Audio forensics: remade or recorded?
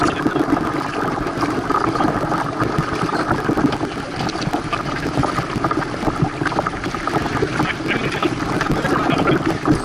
recorded